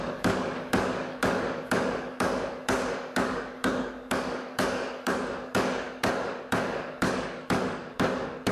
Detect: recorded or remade remade